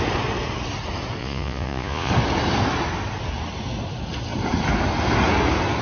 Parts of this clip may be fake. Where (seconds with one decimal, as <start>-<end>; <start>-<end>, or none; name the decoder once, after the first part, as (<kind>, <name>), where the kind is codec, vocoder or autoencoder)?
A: 1.2-2.1 (vocoder, Vocos)